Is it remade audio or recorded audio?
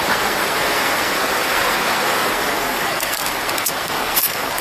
remade